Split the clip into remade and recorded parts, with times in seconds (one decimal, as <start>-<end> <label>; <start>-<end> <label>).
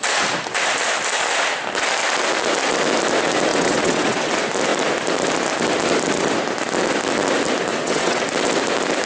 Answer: 0.0-3.5 recorded; 3.5-4.3 remade; 4.3-7.7 recorded; 7.7-8.2 remade; 8.2-9.1 recorded